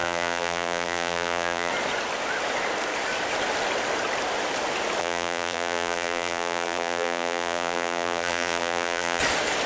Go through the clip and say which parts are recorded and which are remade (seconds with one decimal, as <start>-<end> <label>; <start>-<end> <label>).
0.0-1.7 remade; 1.7-5.0 recorded; 5.0-9.2 remade; 9.2-9.7 recorded